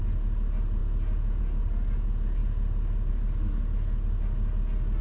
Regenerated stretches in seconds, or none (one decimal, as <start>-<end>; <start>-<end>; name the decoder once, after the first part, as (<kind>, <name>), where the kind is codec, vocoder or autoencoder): none